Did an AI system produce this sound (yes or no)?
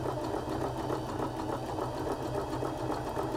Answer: no